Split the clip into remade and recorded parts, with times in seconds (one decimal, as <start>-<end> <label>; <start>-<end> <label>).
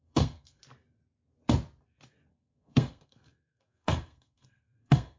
0.0-0.6 remade; 0.6-2.3 recorded; 2.3-5.2 remade